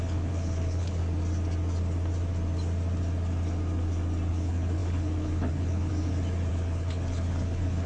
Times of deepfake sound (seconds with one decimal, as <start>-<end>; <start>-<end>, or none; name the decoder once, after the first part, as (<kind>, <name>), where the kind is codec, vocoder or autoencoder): 0.0-1.0 (codec, HILCodec); 4.3-5.9; 6.5-7.9